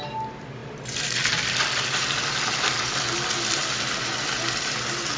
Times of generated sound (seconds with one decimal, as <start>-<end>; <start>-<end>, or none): none